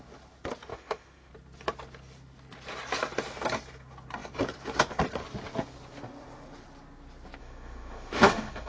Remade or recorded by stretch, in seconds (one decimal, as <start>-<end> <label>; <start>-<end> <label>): 0.0-0.7 recorded; 0.7-1.3 remade; 1.3-7.4 recorded; 7.4-8.7 remade